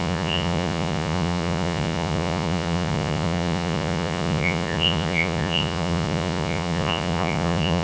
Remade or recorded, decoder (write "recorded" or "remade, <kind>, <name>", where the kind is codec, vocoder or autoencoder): remade, vocoder, Vocos